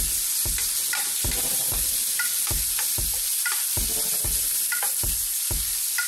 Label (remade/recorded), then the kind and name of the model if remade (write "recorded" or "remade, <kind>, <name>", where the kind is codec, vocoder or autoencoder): recorded